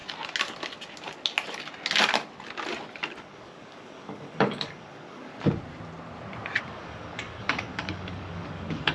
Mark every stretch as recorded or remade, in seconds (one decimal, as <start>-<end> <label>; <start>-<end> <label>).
0.0-3.2 recorded; 3.2-5.3 remade; 5.3-6.6 recorded; 6.6-8.9 remade

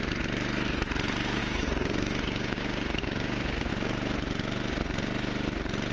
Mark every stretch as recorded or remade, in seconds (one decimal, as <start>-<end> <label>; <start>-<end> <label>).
0.0-1.4 recorded; 1.4-3.7 remade; 3.7-5.9 recorded